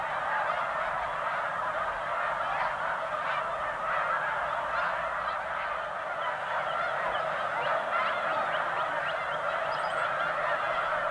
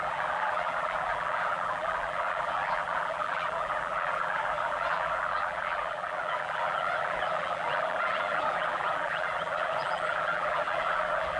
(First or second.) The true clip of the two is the first